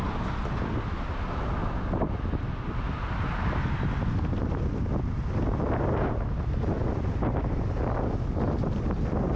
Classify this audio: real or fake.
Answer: real